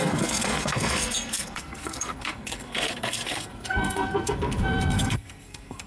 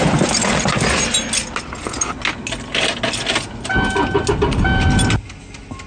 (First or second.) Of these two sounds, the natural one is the second